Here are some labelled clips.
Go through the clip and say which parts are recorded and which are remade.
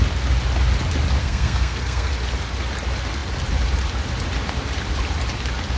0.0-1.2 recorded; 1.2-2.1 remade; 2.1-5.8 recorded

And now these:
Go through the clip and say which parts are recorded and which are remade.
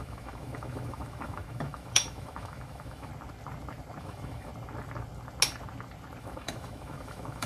0.0-3.1 remade; 3.1-4.0 recorded; 4.0-4.5 remade; 4.5-6.2 recorded; 6.2-7.5 remade